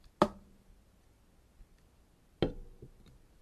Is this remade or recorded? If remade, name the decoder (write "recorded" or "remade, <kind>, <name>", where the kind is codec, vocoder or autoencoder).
recorded